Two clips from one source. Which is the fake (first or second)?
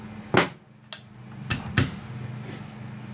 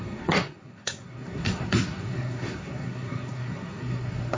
second